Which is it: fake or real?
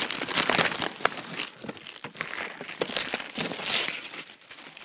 real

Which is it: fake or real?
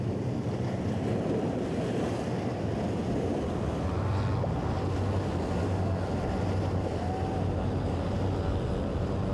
real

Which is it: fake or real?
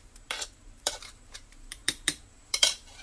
fake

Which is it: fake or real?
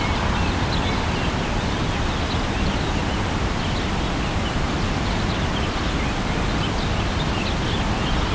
real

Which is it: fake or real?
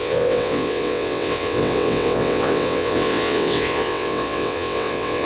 fake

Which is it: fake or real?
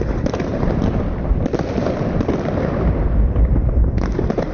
fake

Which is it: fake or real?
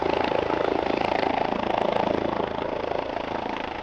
real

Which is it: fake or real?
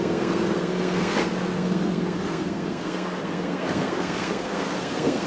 fake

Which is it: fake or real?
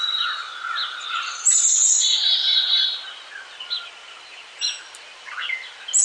real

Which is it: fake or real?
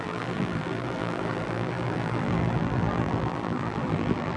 fake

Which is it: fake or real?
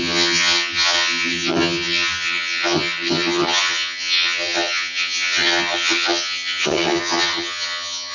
fake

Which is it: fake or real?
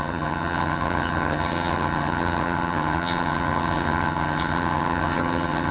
fake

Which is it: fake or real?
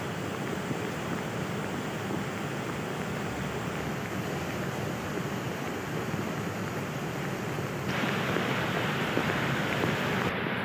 real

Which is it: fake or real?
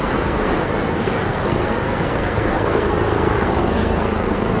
fake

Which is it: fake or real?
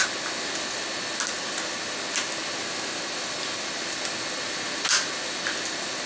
real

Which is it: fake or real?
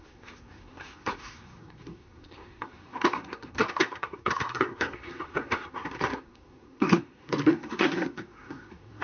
fake